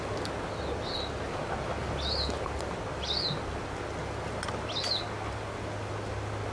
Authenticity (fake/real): real